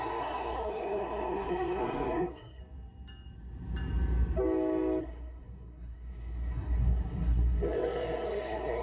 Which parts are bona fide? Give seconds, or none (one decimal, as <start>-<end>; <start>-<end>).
2.6-5.0